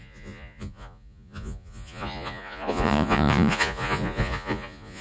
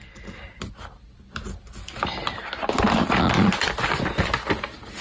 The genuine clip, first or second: second